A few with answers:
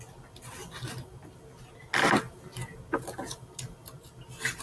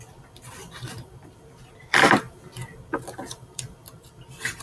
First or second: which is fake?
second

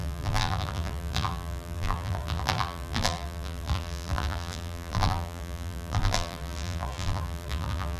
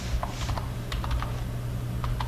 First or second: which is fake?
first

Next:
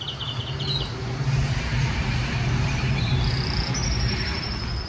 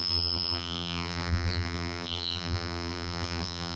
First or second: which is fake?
second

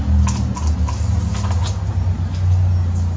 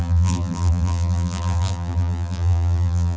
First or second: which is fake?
second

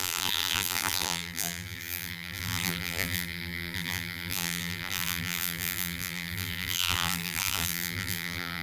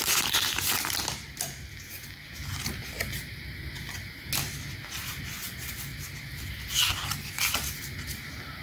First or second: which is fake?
first